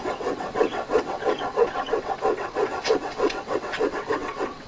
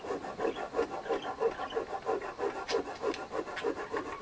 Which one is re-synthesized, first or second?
first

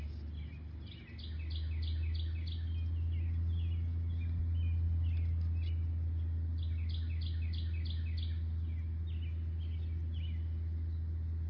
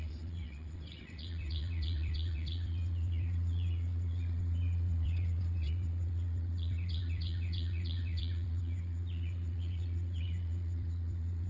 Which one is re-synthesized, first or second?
second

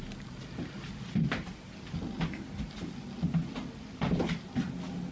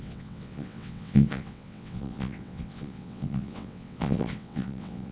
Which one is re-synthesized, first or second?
second